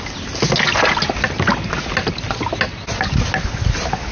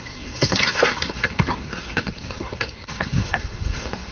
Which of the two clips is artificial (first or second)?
second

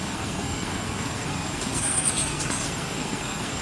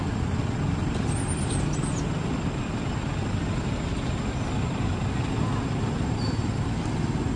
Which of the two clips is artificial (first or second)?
first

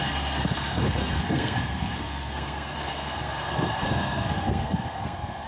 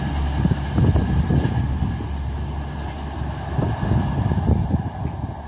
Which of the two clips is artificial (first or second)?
first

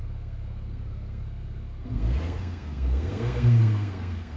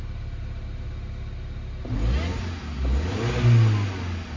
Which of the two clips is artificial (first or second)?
first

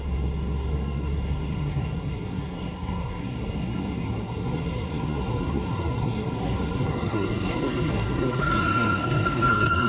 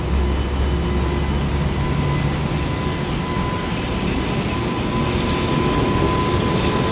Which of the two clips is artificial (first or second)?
first